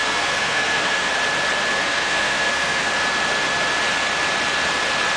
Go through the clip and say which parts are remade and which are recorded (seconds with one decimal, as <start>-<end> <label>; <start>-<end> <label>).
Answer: 0.0-1.1 remade; 1.1-1.8 recorded; 1.8-2.9 remade; 2.9-5.2 recorded